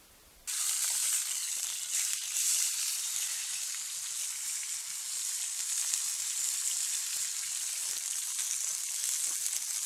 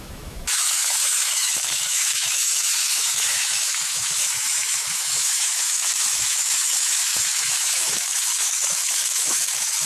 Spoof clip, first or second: second